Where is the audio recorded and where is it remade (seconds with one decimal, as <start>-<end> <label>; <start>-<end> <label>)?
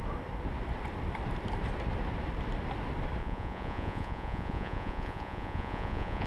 0.0-3.2 recorded; 3.2-6.3 remade